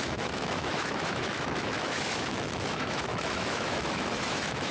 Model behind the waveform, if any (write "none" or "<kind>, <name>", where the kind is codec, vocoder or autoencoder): autoencoder, DAC-VAE